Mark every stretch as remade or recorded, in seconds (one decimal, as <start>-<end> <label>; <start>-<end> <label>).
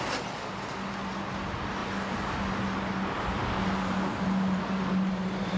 0.0-5.6 recorded